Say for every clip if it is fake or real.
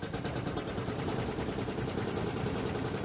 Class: fake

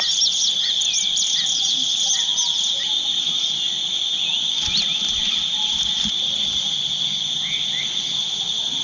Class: real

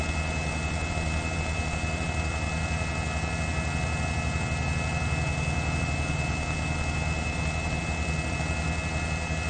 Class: real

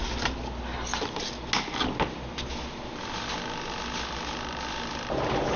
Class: real